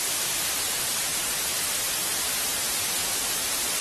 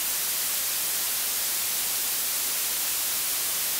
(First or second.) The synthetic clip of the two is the first